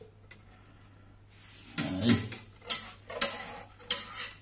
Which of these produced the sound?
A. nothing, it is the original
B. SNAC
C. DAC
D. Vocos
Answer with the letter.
A